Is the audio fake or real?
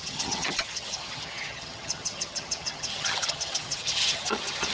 fake